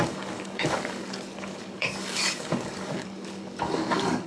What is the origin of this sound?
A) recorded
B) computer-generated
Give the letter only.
B